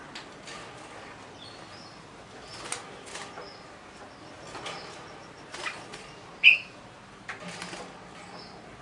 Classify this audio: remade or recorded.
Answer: recorded